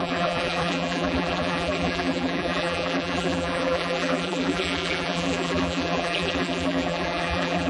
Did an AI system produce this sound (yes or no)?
yes